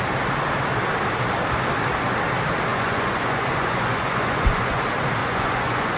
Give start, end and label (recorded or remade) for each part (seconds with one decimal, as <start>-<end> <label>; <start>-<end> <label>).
0.0-2.7 recorded; 2.7-4.8 remade; 4.8-5.2 recorded; 5.2-6.0 remade